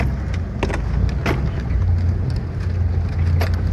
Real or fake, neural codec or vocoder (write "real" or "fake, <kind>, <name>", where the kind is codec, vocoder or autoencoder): real